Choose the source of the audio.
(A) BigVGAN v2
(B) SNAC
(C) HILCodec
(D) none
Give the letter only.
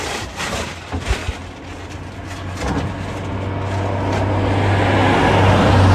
D